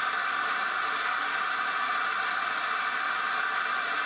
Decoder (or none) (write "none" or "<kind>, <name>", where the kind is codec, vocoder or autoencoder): none